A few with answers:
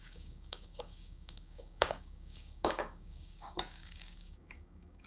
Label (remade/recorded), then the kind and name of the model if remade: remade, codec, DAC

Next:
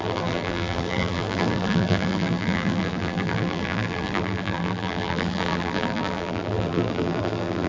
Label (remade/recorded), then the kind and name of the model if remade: remade, vocoder, BigVGAN v2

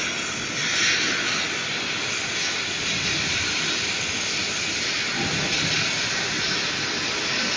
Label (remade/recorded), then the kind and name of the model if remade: recorded